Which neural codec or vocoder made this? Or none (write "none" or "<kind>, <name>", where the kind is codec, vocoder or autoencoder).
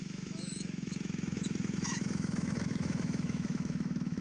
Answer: autoencoder, DAC-VAE